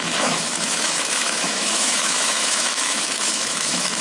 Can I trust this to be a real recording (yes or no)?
no